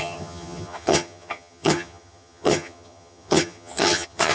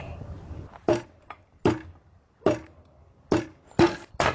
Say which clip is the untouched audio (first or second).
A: second